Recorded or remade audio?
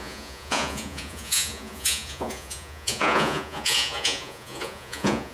remade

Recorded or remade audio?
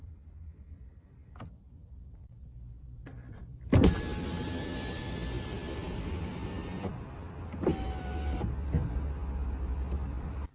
recorded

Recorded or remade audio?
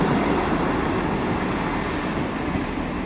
recorded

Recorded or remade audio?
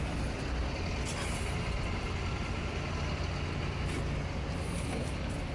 recorded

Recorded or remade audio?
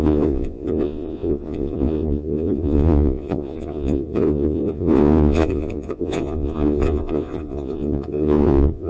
remade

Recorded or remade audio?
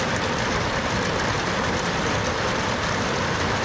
recorded